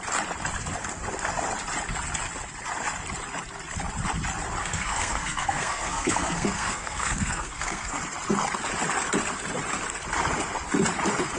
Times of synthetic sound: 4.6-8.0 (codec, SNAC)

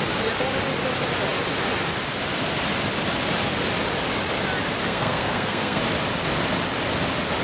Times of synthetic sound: 4.8-5.8 (codec, SNAC)